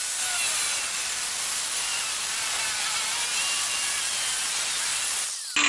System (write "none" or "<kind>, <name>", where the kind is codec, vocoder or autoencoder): none